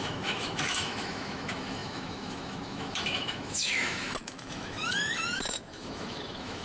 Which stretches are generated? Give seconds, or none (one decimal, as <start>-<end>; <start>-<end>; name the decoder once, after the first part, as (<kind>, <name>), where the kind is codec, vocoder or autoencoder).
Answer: 0.0-6.6 (autoencoder, DAC-VAE)